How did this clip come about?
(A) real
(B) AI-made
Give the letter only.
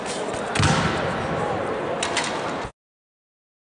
A